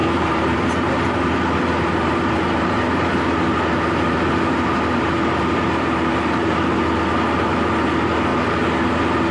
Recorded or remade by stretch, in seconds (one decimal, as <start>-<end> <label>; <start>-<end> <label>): 0.0-3.4 remade; 3.4-4.5 recorded; 4.5-6.8 remade; 6.8-9.3 recorded